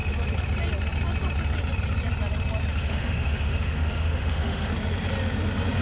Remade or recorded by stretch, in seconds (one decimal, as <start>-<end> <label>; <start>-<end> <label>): 0.0-2.7 recorded; 2.7-4.7 remade; 4.7-5.8 recorded